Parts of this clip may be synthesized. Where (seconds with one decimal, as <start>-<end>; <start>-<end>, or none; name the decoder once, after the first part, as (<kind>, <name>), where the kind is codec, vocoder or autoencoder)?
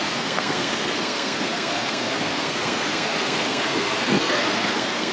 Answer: 0.0-5.1 (codec, SNAC)